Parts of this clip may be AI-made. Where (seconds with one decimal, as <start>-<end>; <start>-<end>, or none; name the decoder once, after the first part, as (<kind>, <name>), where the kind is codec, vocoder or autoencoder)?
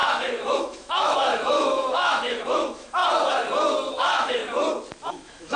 0.0-3.0 (autoencoder, DAC-VAE); 3.9-4.4; 5.1-5.6